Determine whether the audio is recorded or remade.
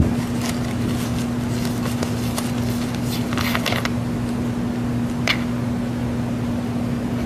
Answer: recorded